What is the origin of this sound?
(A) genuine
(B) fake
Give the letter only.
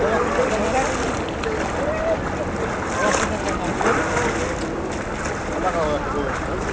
A